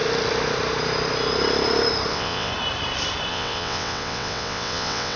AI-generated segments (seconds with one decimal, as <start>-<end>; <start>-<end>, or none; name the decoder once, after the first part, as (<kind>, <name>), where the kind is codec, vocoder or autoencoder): 2.1-2.5 (vocoder, WaveNeXt); 3.3-5.2